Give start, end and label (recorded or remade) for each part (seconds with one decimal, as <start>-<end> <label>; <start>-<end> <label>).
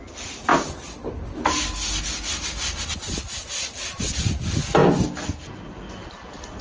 0.0-6.6 recorded